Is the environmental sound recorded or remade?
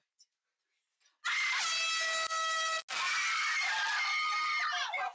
recorded